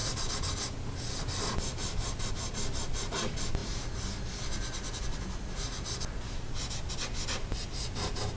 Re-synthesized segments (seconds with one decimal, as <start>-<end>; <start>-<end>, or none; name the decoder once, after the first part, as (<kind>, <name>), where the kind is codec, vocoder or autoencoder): 0.0-2.3 (vocoder, BigVGAN v2)